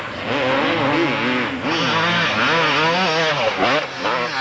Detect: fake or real real